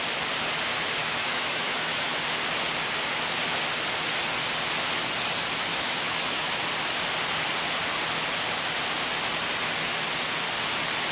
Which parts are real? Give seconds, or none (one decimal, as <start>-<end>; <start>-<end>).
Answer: 0.0-1.0; 2.2-5.7; 6.6-11.1